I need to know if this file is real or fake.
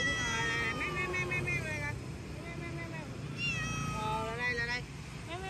real